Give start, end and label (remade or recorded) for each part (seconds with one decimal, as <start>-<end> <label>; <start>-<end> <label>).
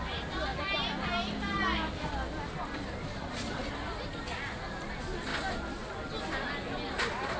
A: 0.0-7.4 recorded